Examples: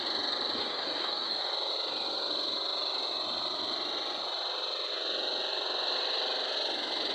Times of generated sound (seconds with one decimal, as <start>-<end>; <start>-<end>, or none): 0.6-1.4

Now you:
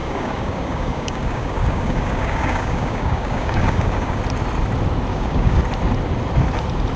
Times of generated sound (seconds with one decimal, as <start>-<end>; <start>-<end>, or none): 0.0-4.2; 5.1-5.6

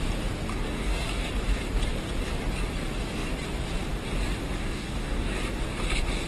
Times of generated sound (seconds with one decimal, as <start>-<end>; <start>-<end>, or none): 0.5-1.3; 4.6-5.4

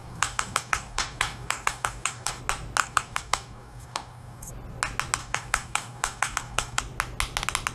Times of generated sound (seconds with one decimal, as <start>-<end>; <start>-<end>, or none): 0.0-2.4; 2.8-4.5; 5.2-6.8

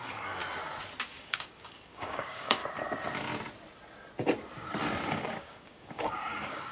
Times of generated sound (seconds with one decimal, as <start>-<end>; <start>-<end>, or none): 0.0-0.4; 1.1-2.6; 5.1-6.7

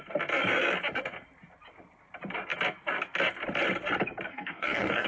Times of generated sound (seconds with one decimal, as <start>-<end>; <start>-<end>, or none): 4.3-5.1